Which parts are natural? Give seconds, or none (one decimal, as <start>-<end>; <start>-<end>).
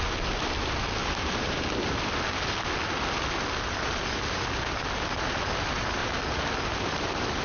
0.0-1.0; 1.7-7.4